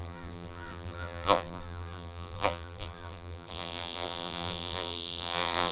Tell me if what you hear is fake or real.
fake